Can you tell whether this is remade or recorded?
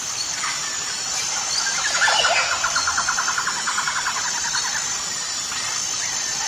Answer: recorded